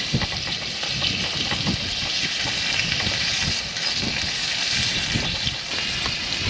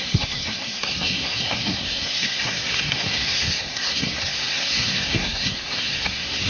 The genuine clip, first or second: first